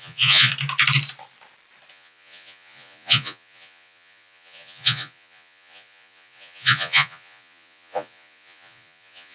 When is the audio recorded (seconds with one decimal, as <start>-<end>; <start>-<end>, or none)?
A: 0.5-1.9